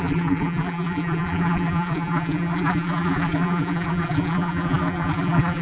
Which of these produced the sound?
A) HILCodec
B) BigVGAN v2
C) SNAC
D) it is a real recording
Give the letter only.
B